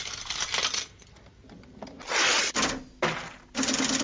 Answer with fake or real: real